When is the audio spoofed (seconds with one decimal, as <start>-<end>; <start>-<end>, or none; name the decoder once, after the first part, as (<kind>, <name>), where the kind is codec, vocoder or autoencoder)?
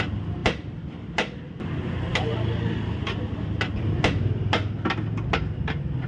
none